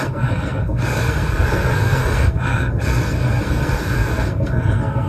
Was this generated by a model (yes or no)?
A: yes